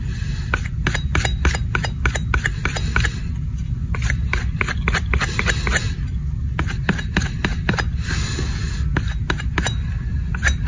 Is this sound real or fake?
real